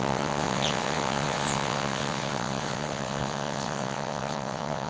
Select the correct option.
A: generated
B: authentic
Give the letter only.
A